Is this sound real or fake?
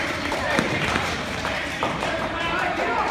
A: fake